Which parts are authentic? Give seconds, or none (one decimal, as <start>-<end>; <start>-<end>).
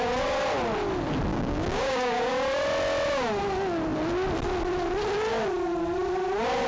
0.0-1.3; 2.3-6.7